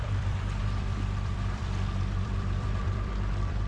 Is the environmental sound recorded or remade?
remade